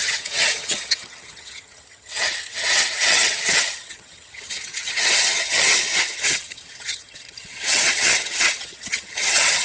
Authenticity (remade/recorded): remade